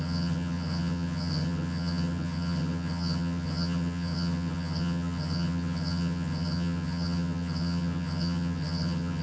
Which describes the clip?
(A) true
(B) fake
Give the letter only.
B